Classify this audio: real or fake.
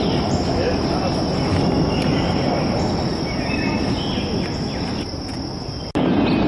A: real